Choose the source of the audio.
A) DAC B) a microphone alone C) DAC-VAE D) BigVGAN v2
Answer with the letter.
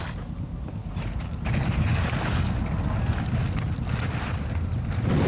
B